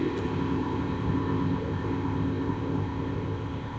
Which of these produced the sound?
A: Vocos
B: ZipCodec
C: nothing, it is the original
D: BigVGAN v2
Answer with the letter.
B